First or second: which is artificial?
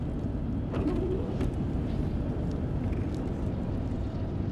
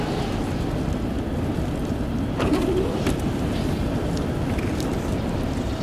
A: second